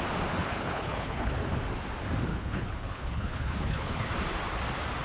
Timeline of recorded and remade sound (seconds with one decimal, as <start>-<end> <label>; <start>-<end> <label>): 0.0-0.4 recorded; 0.4-1.4 remade; 1.4-2.3 recorded; 2.3-4.1 remade; 4.1-5.0 recorded